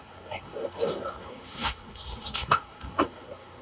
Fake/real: fake